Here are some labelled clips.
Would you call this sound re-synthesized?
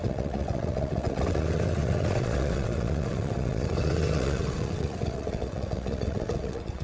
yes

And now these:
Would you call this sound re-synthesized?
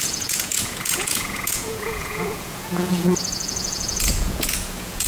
yes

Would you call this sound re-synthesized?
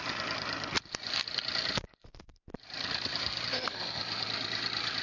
no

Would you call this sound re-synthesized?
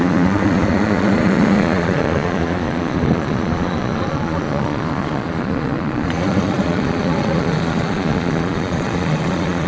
yes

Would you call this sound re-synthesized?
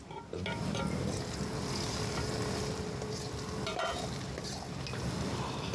no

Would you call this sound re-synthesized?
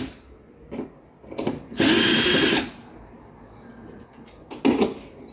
no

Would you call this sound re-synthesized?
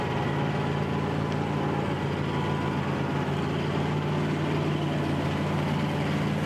no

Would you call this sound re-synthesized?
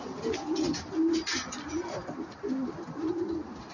no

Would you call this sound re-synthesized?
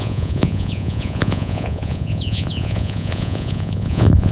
yes